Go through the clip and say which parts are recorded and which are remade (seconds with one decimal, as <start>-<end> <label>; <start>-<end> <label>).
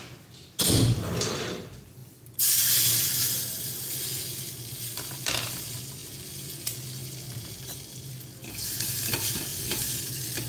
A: 0.0-2.0 recorded; 2.0-2.6 remade; 2.6-7.0 recorded; 7.0-8.1 remade; 8.1-9.5 recorded; 9.5-10.1 remade; 10.1-10.5 recorded